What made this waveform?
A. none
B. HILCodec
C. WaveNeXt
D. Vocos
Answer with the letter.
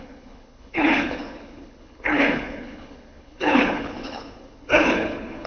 B